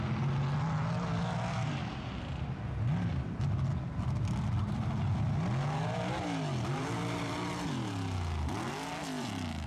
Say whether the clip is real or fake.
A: real